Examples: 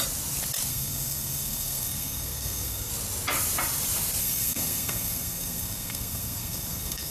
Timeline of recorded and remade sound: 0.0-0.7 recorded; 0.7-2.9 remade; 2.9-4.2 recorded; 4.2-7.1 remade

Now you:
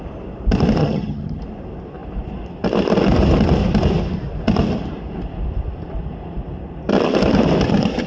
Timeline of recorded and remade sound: 0.0-0.8 recorded; 0.8-1.4 remade; 1.4-8.1 recorded

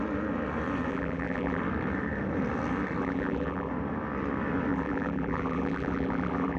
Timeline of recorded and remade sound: 0.0-0.9 recorded; 0.9-1.6 remade; 1.6-3.0 recorded; 3.0-3.7 remade; 3.7-4.7 recorded; 4.7-6.6 remade

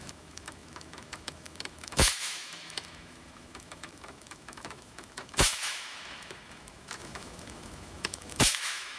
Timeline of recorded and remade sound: 0.0-9.0 remade

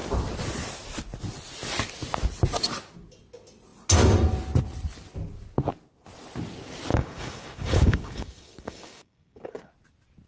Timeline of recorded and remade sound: 0.0-6.9 recorded; 6.9-9.7 remade; 9.7-10.3 recorded

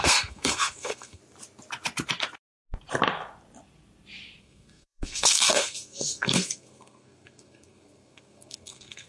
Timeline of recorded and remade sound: 0.0-1.2 remade; 1.2-4.4 recorded; 4.4-9.1 remade

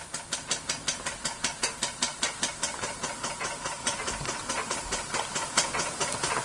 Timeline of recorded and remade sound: 0.0-6.4 recorded

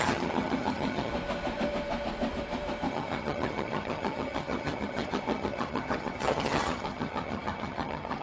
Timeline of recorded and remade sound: 0.0-1.1 remade; 1.1-2.9 recorded; 2.9-8.2 remade